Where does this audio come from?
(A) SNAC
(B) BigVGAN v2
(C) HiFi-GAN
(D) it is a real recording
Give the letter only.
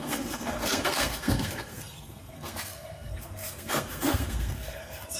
A